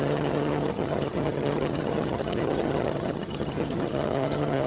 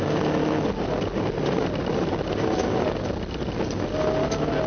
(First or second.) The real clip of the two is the second